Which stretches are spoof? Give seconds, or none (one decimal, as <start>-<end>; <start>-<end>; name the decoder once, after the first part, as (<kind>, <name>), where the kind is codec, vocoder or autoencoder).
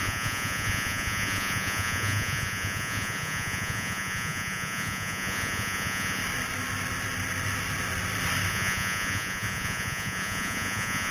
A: 0.0-6.2 (vocoder, Vocos); 8.5-11.1